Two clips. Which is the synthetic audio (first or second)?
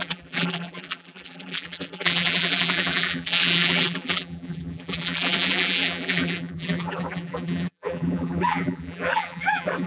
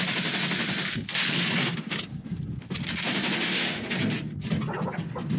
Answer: first